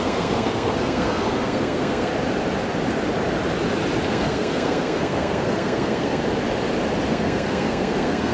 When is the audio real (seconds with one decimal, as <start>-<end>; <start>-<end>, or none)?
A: 2.1-4.1; 6.2-7.1